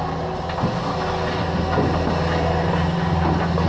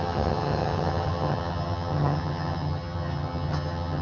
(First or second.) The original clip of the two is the first